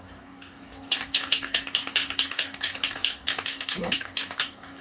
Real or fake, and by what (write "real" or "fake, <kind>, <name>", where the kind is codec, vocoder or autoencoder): fake, codec, DAC